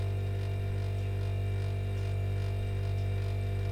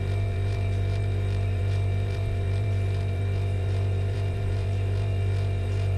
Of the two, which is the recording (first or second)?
first